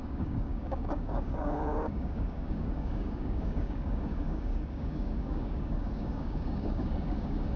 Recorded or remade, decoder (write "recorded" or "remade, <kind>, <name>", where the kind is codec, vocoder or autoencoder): remade, codec, DAC